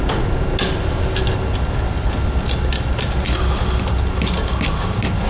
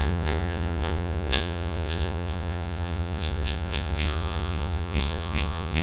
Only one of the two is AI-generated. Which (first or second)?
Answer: second